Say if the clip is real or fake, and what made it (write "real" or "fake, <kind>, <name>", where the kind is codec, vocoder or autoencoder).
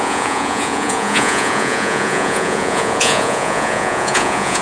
fake, vocoder, Vocos